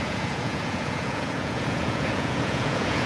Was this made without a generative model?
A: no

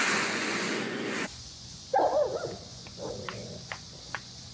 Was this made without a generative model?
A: no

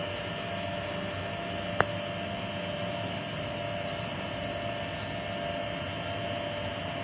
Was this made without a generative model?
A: yes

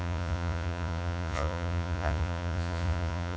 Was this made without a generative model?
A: no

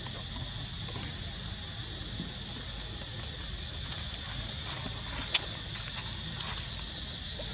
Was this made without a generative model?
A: yes